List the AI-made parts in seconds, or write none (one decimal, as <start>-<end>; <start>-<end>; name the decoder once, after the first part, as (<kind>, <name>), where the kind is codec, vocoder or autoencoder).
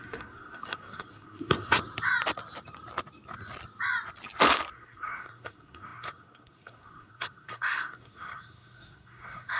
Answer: 0.0-1.8 (codec, SNAC); 4.7-9.6